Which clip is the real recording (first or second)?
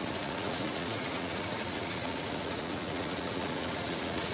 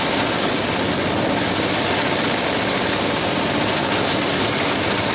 second